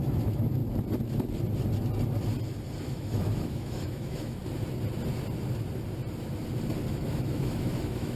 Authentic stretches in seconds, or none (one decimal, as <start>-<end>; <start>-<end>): 0.6-2.8; 4.4-6.9